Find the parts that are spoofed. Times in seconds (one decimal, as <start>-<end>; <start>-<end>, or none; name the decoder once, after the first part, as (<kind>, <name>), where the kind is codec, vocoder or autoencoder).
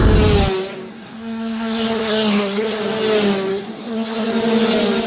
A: 0.9-2.8 (codec, SNAC); 3.5-4.3